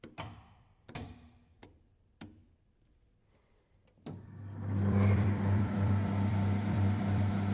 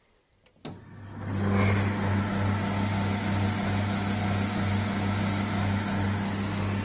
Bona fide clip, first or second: second